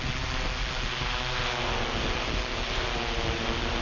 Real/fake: real